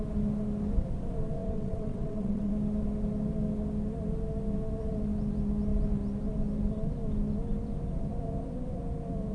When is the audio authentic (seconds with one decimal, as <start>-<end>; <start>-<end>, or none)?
0.0-1.4; 2.5-9.3